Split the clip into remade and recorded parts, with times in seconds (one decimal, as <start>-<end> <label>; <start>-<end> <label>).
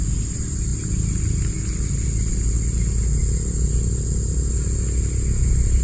0.0-5.8 recorded